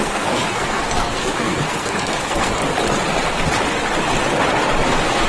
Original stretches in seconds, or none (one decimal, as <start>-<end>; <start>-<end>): 2.6-5.3

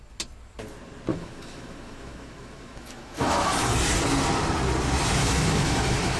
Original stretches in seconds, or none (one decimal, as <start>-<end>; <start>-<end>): 0.0-1.1; 3.7-5.2

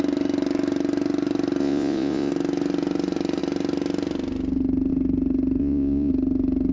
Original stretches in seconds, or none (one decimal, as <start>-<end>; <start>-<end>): 0.0-1.6; 2.3-5.6; 6.1-6.7

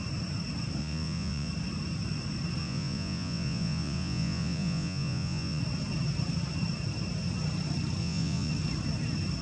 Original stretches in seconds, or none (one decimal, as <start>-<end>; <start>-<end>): 0.0-0.8; 1.5-2.6; 5.6-8.0; 8.5-9.4

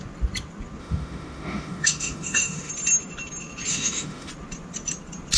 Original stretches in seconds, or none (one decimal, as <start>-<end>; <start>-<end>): 0.0-0.8; 2.7-3.7; 4.3-5.4

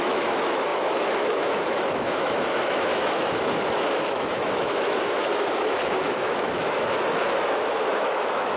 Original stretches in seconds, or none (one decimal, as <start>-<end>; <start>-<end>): 7.2-7.9

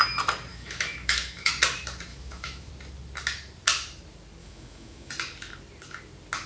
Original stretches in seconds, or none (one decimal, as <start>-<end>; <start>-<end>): 0.0-0.5; 1.5-2.1; 2.7-4.4; 5.1-6.5

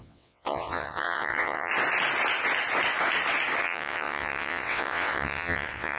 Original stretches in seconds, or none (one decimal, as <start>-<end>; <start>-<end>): 1.7-3.6